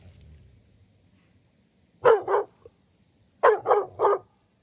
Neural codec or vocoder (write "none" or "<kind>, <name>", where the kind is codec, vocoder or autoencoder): none